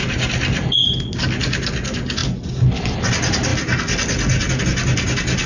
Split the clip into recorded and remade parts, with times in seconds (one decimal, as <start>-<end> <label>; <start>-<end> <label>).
0.0-5.5 recorded